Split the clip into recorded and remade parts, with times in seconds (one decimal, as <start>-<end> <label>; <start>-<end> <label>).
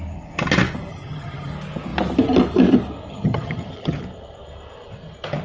0.0-0.9 recorded; 0.9-1.5 remade; 1.5-3.1 recorded; 3.1-4.0 remade; 4.0-5.4 recorded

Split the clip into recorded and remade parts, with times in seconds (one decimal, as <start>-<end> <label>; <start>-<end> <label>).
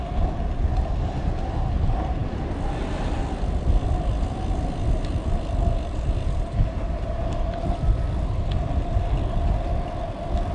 0.0-10.5 recorded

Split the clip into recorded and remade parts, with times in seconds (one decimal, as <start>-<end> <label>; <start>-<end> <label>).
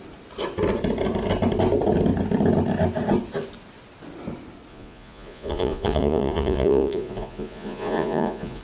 0.0-4.7 recorded; 4.7-8.6 remade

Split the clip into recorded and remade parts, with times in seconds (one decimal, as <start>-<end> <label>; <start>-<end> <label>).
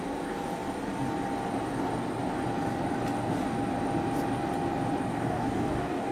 0.0-5.1 recorded; 5.1-6.1 remade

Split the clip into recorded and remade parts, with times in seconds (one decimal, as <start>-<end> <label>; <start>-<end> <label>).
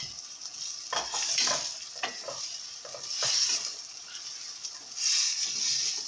0.0-3.7 remade; 3.7-6.1 recorded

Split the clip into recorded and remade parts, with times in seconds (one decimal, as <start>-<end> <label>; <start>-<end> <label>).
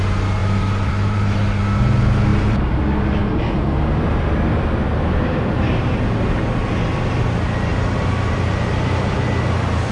0.0-0.4 recorded; 0.4-1.6 remade; 1.6-2.3 recorded; 2.3-2.8 remade; 2.8-7.7 recorded; 7.7-9.1 remade; 9.1-9.9 recorded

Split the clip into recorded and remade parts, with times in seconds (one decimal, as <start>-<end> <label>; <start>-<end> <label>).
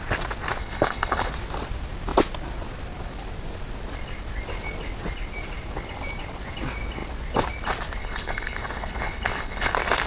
0.0-0.6 recorded; 0.6-1.3 remade; 1.3-8.0 recorded; 8.0-9.7 remade; 9.7-10.1 recorded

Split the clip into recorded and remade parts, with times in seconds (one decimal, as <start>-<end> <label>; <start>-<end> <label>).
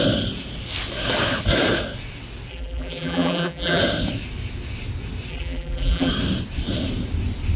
0.0-2.5 recorded; 2.5-3.8 remade; 3.8-5.3 recorded; 5.3-6.1 remade; 6.1-7.6 recorded